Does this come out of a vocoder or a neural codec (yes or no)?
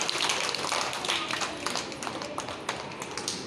no